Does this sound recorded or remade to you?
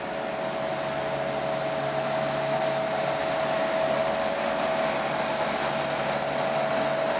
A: recorded